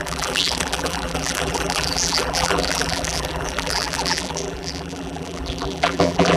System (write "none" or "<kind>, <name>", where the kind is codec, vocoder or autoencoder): vocoder, BigVGAN v2